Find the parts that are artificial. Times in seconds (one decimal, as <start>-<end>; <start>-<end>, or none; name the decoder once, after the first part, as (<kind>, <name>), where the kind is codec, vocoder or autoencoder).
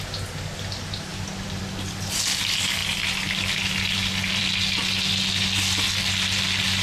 1.1-1.6 (vocoder, BigVGAN v2)